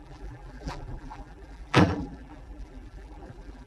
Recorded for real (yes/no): no